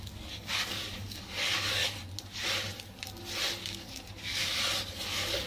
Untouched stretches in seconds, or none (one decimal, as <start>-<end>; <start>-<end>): 1.8-3.6; 4.5-5.1